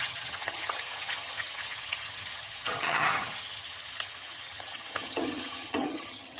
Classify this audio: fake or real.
fake